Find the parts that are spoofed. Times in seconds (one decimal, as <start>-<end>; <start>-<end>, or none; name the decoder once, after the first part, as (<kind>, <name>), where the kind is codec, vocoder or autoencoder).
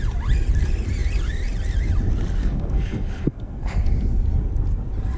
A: 2.4-3.9 (codec, SNAC)